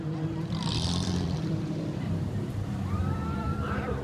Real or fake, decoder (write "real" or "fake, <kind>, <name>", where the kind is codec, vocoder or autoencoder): fake, vocoder, BigVGAN v2